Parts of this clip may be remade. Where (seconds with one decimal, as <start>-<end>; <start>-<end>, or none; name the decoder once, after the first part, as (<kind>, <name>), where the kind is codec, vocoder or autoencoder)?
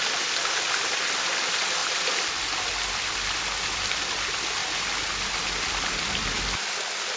none